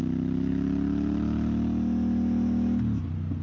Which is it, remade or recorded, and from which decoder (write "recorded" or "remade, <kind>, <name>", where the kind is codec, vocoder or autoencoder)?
recorded